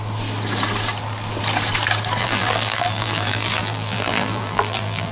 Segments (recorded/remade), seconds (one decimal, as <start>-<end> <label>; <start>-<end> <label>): 0.0-2.2 recorded; 2.2-5.1 remade